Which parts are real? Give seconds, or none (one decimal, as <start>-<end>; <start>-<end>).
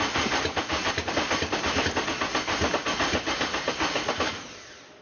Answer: 0.0-5.0